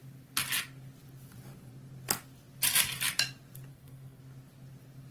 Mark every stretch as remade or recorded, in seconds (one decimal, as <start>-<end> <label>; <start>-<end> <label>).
0.0-3.7 recorded; 3.7-4.2 remade; 4.2-5.1 recorded